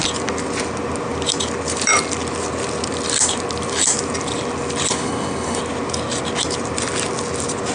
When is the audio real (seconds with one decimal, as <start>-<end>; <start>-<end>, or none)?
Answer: 0.0-4.9; 5.6-7.7